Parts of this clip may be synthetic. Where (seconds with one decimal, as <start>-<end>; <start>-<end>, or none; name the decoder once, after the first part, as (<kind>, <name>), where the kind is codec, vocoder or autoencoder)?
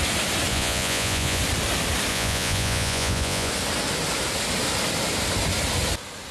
0.5-1.4 (vocoder, Vocos); 2.1-3.5